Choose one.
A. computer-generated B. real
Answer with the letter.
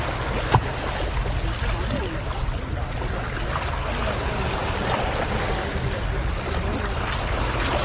B